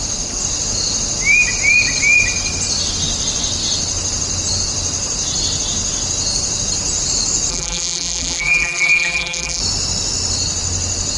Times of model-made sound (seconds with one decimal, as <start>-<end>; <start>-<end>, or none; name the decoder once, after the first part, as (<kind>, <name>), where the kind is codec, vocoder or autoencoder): 7.5-9.6 (vocoder, BigVGAN v2)